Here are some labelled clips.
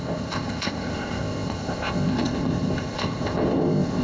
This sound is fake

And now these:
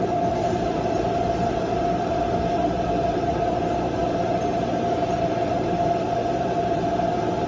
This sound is fake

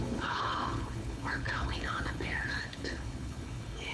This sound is fake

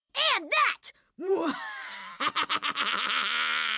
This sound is fake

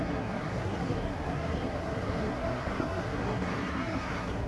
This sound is fake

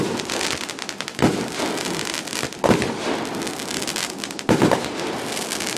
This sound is real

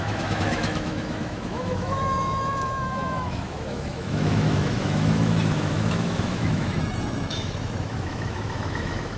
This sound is fake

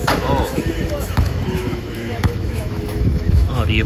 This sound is fake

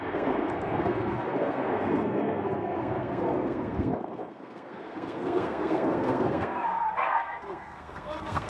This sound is fake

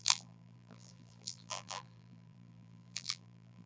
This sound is fake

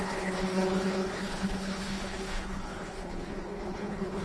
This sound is fake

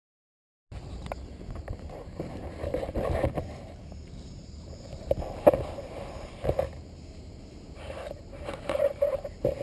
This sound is fake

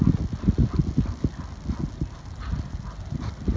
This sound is real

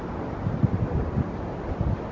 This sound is real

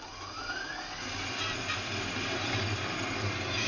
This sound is real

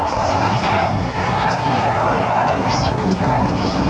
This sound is fake